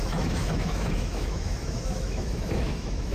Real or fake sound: fake